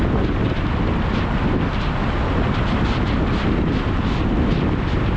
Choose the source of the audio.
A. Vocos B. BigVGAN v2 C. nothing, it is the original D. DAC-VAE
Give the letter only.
C